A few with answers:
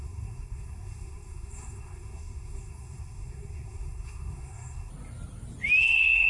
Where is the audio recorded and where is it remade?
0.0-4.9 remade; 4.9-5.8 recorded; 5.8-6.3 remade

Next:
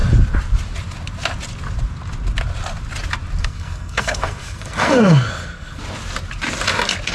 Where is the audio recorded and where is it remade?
0.0-3.4 recorded; 3.4-5.8 remade; 5.8-7.1 recorded

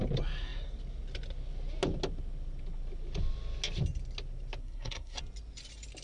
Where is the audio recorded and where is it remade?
0.0-4.6 recorded; 4.6-5.2 remade; 5.2-6.0 recorded

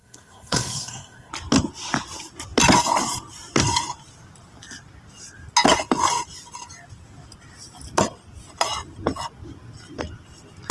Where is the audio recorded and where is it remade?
0.0-1.3 remade; 1.3-10.7 recorded

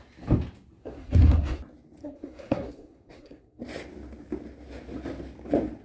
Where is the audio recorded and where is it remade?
0.0-0.8 recorded; 0.8-1.6 remade; 1.6-2.0 recorded; 2.0-3.6 remade; 3.6-5.8 recorded

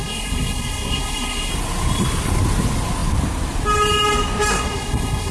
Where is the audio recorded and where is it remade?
0.0-1.5 remade; 1.5-4.5 recorded; 4.5-5.3 remade

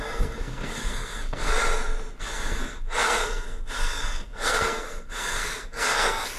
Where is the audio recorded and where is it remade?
0.0-1.5 remade; 1.5-2.2 recorded; 2.2-6.4 remade